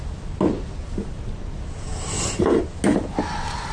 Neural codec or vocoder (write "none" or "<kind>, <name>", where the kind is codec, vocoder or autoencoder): none